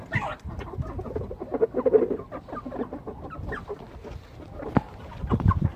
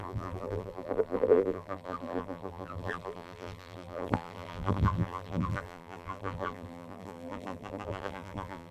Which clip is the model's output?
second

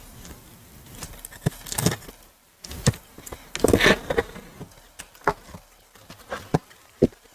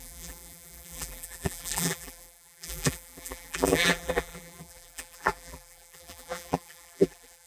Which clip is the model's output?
second